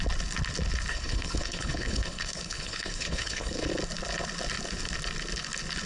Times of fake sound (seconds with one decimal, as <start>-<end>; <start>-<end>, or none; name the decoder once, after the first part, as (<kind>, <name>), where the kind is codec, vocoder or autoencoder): 0.9-3.7 (codec, HILCodec)